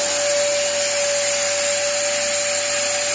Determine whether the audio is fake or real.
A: real